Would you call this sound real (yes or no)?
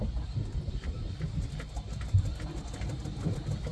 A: yes